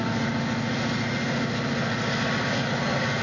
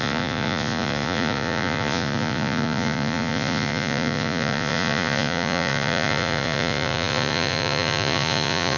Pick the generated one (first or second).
second